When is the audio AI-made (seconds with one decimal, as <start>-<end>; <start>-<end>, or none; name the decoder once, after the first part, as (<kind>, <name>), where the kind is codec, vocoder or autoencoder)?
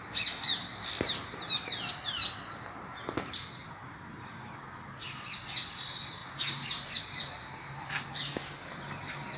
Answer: none